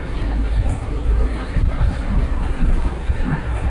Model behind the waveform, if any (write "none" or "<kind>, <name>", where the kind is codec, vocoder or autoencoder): codec, SNAC